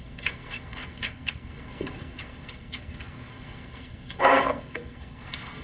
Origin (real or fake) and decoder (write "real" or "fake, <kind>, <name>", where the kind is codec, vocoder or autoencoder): fake, codec, SNAC